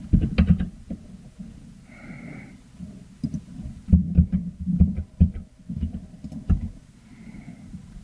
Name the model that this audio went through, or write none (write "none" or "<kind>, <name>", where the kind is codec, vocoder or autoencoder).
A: none